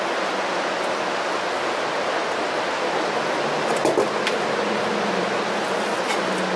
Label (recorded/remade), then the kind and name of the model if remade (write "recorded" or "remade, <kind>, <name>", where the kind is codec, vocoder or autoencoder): recorded